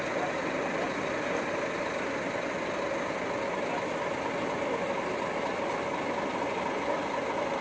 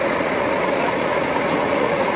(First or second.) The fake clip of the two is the second